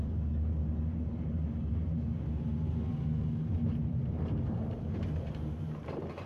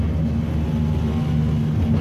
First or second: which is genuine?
second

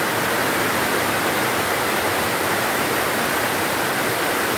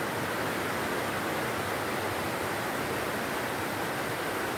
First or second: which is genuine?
second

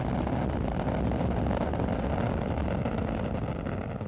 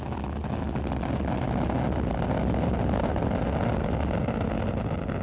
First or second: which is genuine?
second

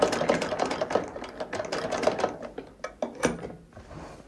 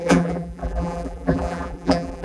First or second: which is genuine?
first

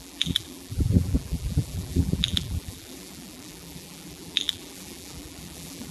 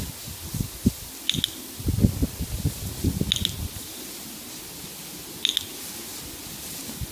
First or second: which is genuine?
second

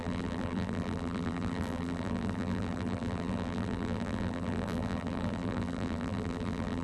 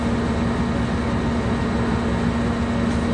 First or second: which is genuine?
second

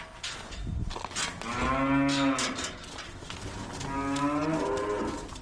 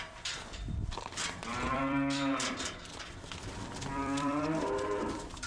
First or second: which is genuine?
first